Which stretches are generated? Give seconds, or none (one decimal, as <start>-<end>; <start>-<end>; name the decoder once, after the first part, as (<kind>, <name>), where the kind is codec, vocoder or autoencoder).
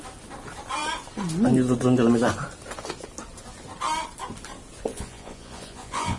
4.9-6.2 (vocoder, Vocos)